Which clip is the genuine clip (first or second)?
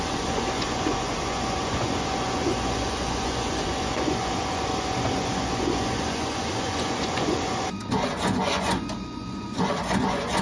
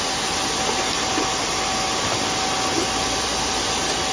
second